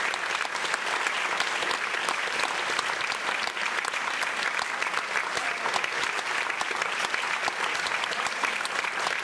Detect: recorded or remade recorded